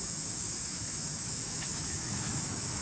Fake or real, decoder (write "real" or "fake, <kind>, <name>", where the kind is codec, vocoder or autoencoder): fake, autoencoder, DAC-VAE